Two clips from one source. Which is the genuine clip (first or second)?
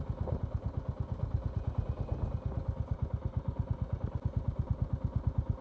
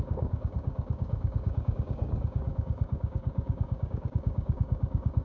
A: first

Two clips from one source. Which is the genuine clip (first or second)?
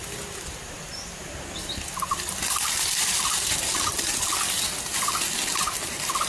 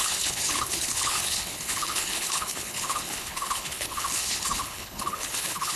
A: first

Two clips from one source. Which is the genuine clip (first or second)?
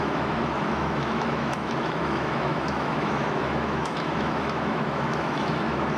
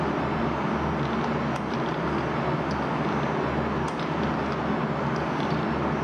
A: second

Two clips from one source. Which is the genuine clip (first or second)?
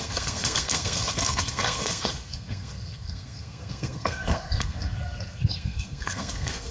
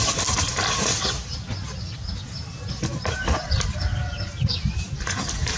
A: second